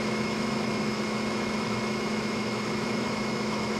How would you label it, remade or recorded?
remade